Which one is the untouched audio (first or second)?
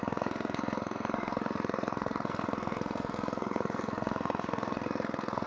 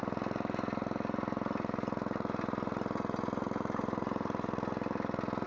second